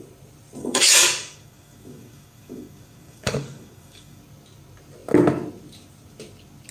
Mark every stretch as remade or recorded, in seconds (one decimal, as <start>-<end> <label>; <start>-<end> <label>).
0.0-0.6 recorded; 0.6-4.2 remade; 4.2-6.7 recorded